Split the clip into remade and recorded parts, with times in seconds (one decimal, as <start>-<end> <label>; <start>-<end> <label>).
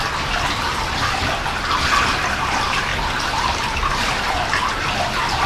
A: 0.0-2.9 recorded; 2.9-4.1 remade; 4.1-5.5 recorded